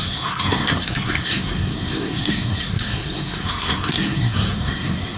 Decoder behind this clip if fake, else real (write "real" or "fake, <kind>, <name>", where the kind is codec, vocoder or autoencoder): fake, codec, SNAC